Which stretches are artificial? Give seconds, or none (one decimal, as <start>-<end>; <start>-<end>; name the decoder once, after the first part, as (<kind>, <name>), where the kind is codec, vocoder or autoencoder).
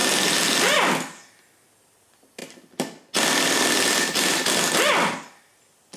none